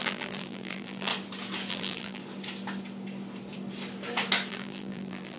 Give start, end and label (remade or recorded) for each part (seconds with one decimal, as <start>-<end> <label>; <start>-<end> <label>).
0.0-1.1 remade; 1.1-1.7 recorded; 1.7-2.2 remade; 2.2-4.5 recorded; 4.5-5.4 remade